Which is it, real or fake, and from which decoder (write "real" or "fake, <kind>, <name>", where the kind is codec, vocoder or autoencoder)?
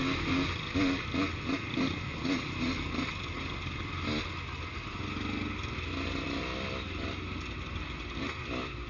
real